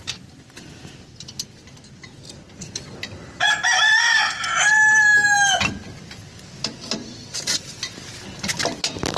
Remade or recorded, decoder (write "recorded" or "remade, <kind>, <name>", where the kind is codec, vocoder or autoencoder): recorded